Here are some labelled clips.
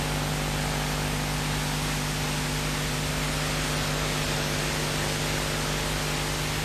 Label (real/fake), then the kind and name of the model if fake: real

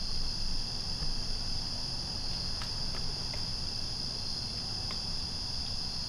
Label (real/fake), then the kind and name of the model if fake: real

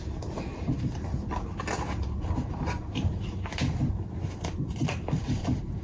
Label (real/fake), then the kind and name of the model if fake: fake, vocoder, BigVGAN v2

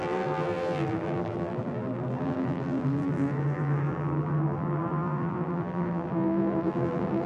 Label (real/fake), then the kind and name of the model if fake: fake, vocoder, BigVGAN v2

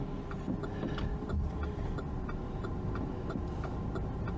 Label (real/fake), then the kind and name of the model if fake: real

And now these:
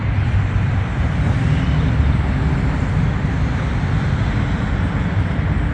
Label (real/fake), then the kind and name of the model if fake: real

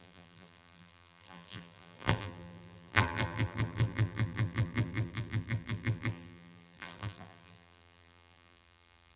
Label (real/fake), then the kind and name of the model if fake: fake, vocoder, BigVGAN v2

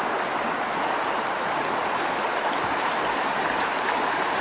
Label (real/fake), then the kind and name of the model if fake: fake, vocoder, BigVGAN v2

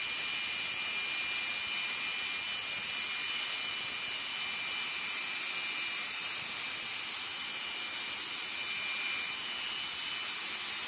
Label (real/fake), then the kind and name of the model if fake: real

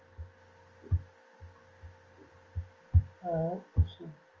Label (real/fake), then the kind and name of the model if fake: real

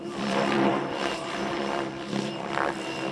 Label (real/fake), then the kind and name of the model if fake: fake, vocoder, BigVGAN v2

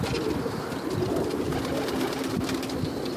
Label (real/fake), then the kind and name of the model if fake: real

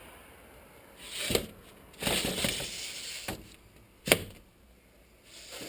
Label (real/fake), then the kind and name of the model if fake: real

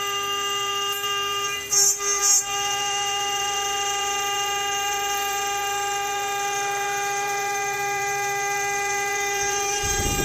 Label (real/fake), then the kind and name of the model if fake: fake, vocoder, BigVGAN v2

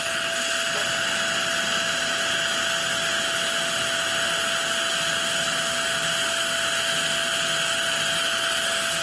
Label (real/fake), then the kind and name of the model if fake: real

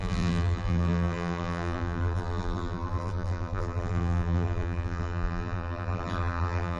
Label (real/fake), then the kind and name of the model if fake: fake, vocoder, BigVGAN v2